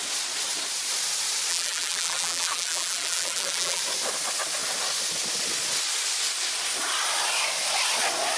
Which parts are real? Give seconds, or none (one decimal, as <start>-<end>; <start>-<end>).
0.0-1.5; 3.8-8.4